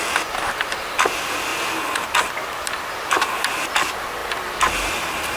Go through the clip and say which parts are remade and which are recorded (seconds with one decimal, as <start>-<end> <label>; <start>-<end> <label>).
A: 0.0-5.4 recorded